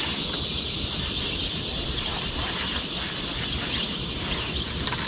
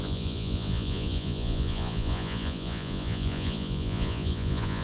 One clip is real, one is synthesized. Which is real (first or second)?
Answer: first